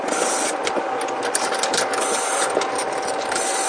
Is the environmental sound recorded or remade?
recorded